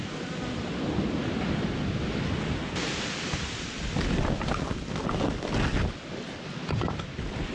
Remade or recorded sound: recorded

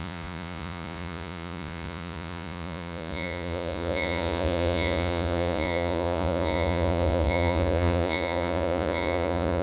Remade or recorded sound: remade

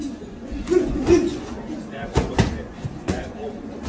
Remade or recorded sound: remade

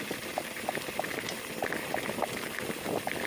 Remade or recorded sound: recorded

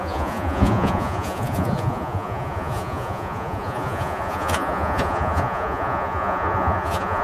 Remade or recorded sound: remade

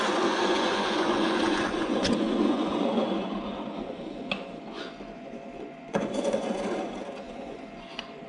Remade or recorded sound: remade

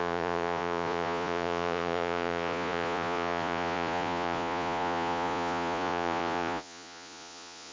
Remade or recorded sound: remade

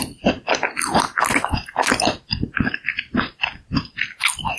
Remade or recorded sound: recorded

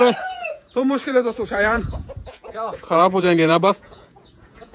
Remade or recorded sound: remade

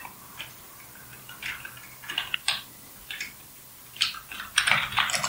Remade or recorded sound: recorded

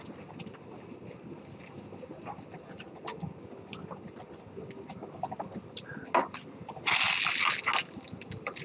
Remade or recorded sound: recorded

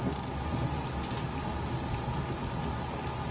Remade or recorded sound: recorded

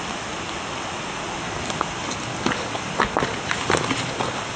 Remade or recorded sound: recorded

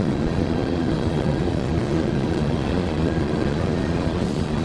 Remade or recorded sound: remade